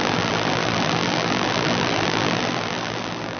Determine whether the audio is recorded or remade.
remade